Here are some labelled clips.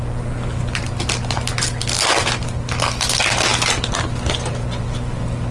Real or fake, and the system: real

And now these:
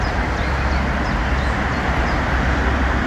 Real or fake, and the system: real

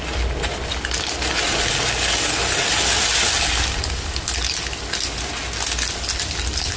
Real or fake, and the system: real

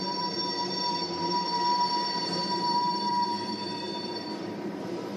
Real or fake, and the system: fake, vocoder, BigVGAN v2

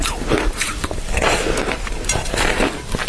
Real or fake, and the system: fake, vocoder, BigVGAN v2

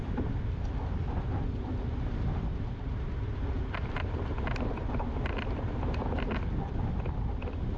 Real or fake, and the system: real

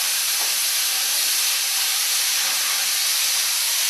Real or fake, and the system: fake, vocoder, BigVGAN v2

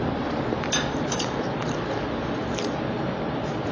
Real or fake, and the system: fake, vocoder, BigVGAN v2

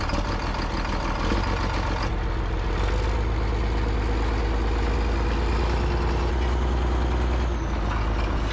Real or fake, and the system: real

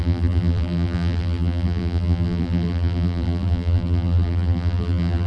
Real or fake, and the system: fake, vocoder, BigVGAN v2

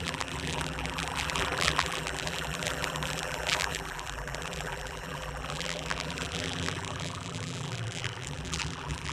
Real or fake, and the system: fake, vocoder, BigVGAN v2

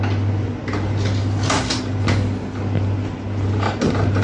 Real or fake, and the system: real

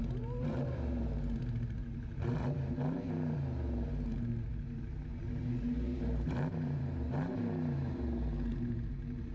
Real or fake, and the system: fake, vocoder, BigVGAN v2